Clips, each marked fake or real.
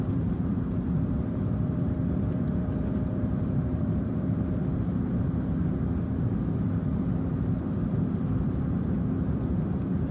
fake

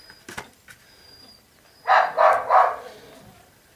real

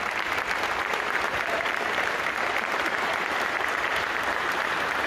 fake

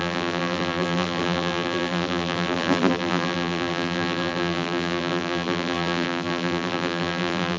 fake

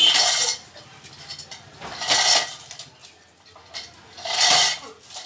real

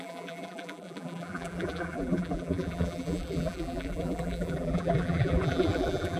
fake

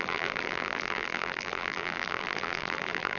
fake